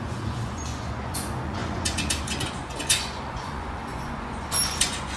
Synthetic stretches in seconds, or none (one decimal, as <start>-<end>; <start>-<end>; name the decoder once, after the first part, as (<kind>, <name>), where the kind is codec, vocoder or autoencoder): 0.0-5.2 (vocoder, Vocos)